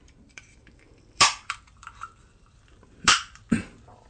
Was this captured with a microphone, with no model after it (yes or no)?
no